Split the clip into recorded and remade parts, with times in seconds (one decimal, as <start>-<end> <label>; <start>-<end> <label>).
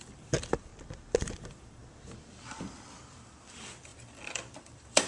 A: 0.0-0.7 remade; 0.7-1.2 recorded; 1.2-1.8 remade; 1.8-2.6 recorded; 2.6-5.1 remade